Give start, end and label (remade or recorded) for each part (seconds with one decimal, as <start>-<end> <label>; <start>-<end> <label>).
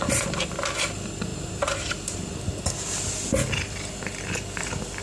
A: 0.0-1.3 recorded; 1.3-2.6 remade; 2.6-5.0 recorded